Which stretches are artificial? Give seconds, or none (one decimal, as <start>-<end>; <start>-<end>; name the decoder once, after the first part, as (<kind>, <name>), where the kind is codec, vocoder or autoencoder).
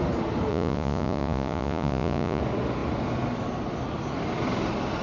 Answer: 0.5-2.4 (vocoder, Vocos)